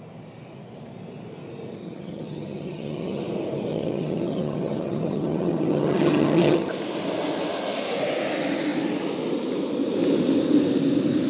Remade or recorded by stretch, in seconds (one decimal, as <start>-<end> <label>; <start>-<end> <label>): 0.0-1.8 recorded; 1.8-3.2 remade; 3.2-3.7 recorded; 3.7-6.7 remade; 6.7-11.3 recorded